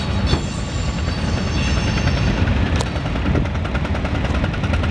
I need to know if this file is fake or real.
real